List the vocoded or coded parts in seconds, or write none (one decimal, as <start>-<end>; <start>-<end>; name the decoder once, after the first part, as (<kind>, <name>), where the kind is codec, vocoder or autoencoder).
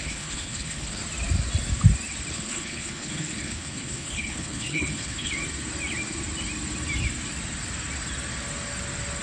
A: 0.0-1.0 (codec, HILCodec); 2.3-5.3